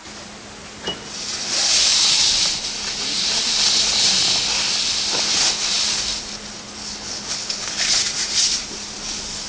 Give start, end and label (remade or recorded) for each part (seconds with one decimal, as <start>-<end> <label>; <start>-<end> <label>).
0.0-6.8 recorded; 6.8-8.0 remade; 8.0-9.5 recorded